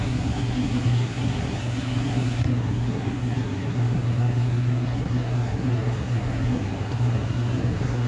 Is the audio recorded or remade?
remade